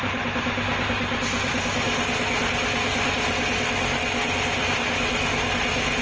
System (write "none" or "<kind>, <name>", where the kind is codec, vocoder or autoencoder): none